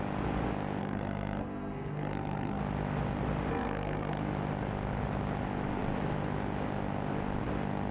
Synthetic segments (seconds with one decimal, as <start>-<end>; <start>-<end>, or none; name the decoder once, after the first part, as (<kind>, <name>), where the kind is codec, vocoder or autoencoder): 0.8-2.6 (codec, SNAC); 3.5-4.2